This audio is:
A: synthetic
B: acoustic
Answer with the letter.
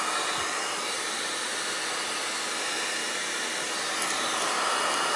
B